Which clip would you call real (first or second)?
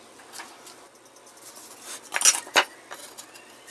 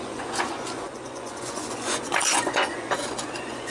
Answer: first